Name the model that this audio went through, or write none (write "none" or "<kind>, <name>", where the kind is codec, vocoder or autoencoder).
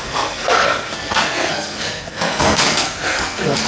codec, SNAC